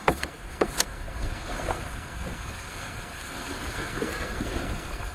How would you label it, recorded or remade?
remade